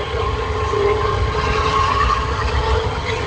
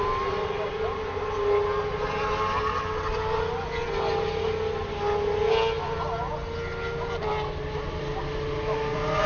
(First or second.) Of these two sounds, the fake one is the first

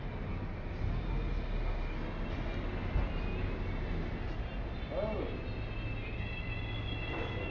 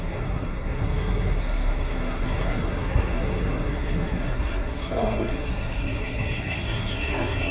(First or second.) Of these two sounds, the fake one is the second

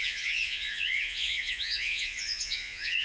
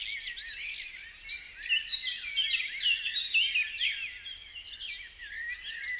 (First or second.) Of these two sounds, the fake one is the first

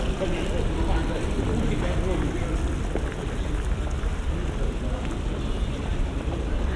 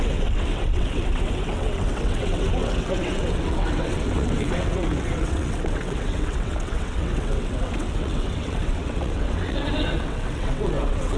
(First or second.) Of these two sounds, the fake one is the second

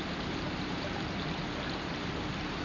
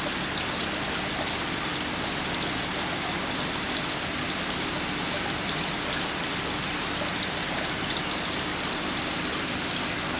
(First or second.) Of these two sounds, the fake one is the first